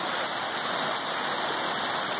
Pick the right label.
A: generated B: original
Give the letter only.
B